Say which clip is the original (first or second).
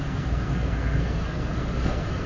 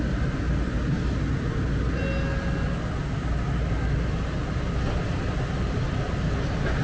second